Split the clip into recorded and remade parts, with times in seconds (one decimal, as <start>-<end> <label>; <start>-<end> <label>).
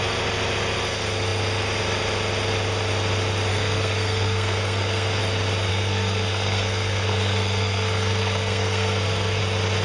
0.0-3.5 recorded; 3.5-5.2 remade; 5.2-5.7 recorded; 5.7-9.4 remade; 9.4-9.8 recorded